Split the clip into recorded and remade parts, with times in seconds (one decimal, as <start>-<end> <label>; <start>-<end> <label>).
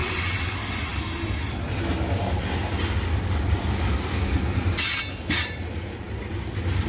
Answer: 0.0-0.5 remade; 0.5-6.9 recorded